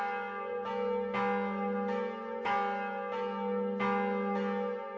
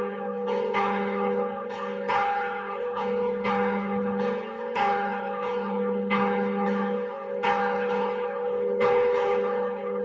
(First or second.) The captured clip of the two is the first